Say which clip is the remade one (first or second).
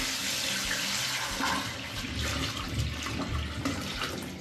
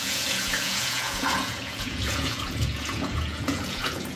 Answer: second